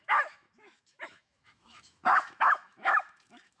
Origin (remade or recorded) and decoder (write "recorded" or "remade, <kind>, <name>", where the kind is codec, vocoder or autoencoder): remade, autoencoder, DAC-VAE